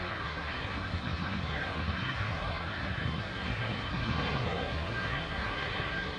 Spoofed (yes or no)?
yes